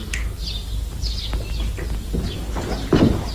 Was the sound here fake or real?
real